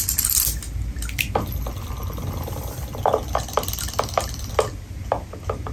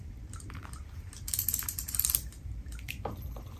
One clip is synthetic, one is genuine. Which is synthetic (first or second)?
second